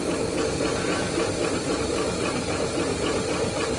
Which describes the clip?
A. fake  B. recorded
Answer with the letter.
B